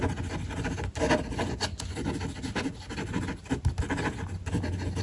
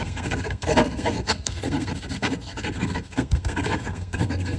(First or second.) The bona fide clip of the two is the first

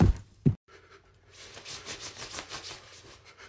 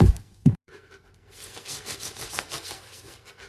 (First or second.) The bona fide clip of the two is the first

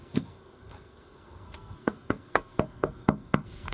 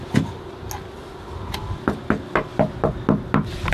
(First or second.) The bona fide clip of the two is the second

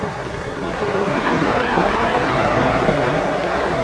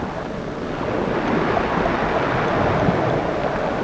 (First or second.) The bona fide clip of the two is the second